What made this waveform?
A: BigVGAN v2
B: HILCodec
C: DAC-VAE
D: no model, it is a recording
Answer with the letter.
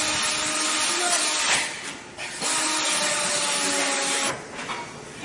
D